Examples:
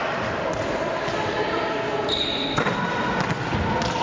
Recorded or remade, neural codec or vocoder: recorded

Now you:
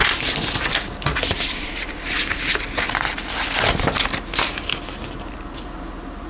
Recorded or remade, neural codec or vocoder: recorded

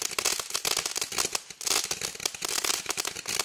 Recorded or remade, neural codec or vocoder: recorded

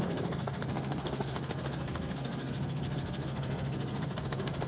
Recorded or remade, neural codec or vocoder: remade, codec, SNAC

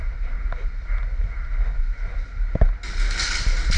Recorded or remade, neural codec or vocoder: recorded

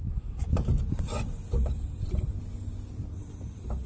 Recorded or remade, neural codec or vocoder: recorded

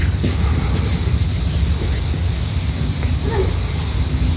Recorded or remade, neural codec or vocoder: recorded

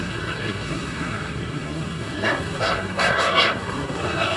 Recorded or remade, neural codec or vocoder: remade, codec, SNAC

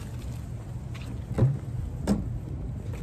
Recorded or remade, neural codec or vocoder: recorded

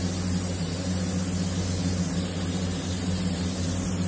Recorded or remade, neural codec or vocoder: recorded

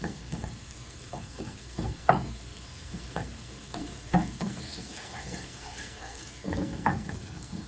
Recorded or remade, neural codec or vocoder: remade, codec, SNAC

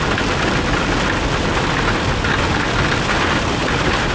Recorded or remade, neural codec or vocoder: recorded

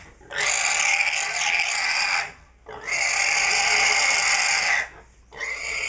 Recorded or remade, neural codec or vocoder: recorded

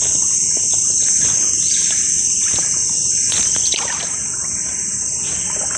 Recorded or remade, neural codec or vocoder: recorded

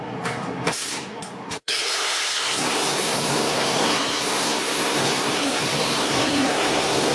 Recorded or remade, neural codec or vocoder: remade, codec, SNAC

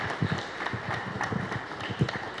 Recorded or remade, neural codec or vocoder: recorded